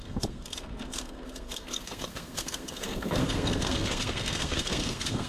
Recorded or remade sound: remade